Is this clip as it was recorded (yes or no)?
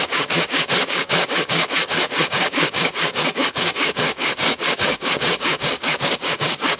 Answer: no